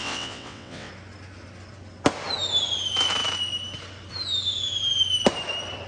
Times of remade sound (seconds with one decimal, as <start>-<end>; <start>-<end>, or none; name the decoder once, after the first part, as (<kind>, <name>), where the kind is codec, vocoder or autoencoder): 0.0-0.9 (vocoder, WaveNeXt)